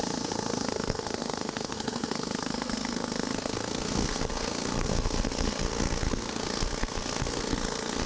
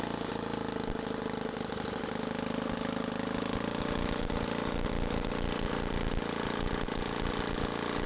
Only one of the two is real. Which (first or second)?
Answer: second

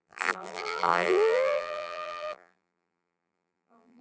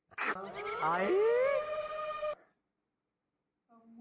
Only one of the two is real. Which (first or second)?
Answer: second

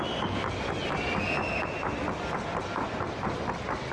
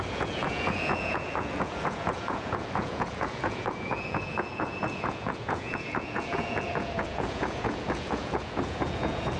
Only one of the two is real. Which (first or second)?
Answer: first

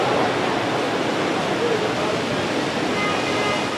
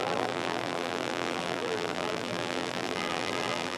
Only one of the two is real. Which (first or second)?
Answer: first